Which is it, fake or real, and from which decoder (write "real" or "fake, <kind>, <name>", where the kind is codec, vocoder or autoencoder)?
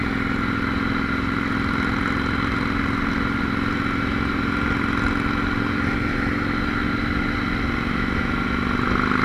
real